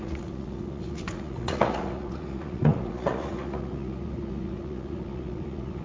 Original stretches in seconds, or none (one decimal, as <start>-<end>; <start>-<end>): none